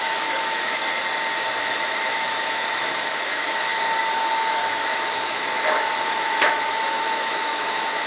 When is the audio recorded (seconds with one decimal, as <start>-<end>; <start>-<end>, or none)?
0.8-1.6; 3.7-4.5